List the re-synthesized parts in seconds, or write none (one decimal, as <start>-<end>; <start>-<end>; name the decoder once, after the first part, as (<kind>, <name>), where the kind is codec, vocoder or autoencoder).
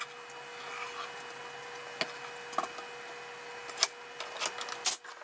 none